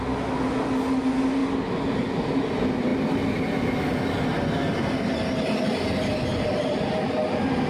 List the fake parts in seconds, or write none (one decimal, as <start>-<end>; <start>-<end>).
none